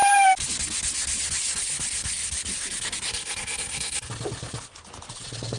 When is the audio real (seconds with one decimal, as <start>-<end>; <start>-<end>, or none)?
0.0-3.1; 4.1-5.6